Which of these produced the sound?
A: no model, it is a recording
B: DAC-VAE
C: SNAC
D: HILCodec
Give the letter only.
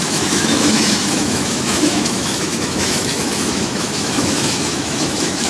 B